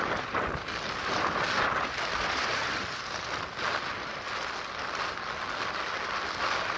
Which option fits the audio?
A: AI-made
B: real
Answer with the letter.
B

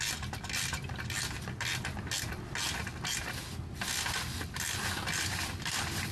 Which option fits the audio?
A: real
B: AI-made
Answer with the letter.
A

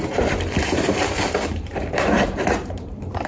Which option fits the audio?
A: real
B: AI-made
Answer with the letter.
B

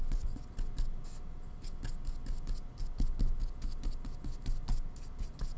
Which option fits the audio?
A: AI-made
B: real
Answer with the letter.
B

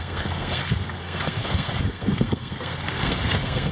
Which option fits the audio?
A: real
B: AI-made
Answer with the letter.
B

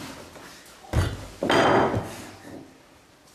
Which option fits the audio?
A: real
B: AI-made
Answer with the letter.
A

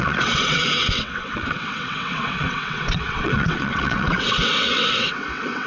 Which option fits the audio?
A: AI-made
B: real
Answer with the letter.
A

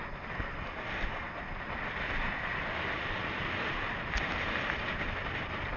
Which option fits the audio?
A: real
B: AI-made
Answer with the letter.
A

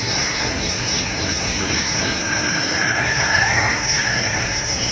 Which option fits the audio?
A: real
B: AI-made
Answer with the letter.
B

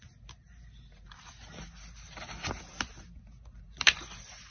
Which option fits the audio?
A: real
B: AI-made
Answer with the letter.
A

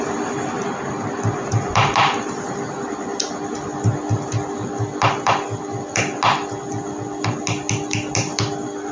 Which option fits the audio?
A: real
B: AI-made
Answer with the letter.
A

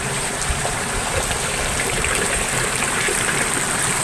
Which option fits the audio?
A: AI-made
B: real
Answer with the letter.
A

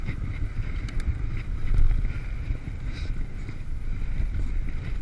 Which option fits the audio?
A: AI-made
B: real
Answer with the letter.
B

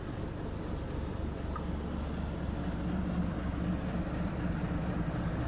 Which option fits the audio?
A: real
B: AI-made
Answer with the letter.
A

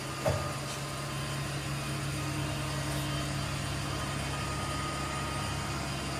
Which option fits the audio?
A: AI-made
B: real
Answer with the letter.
B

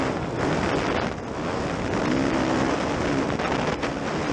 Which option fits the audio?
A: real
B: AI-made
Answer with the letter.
A